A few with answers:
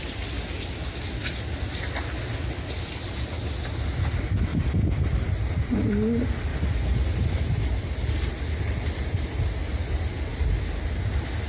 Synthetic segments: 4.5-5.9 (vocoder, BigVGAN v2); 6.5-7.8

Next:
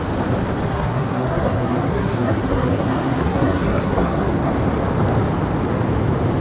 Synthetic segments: 0.7-4.5 (codec, SNAC)